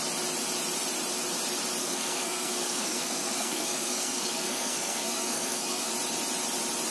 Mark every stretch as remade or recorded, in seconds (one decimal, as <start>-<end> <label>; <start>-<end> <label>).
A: 0.0-1.8 recorded; 1.8-5.9 remade; 5.9-6.9 recorded